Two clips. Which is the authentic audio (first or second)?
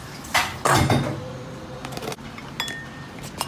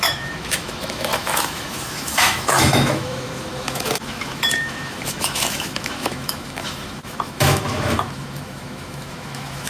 first